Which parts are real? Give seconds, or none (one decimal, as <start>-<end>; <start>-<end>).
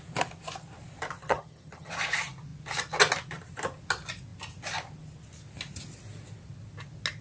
0.0-1.2; 1.9-7.2